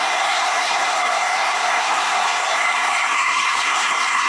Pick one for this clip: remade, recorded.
remade